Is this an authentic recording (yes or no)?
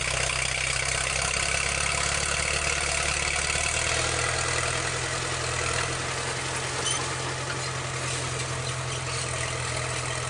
yes